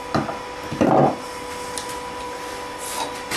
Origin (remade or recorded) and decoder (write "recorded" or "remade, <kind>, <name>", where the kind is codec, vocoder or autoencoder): recorded